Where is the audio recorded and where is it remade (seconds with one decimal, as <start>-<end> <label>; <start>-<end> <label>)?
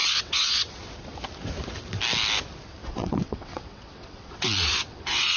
0.0-0.9 remade; 0.9-2.8 recorded; 2.8-5.4 remade